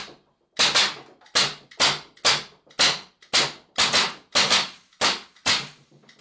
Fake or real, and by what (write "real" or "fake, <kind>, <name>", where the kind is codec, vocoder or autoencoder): real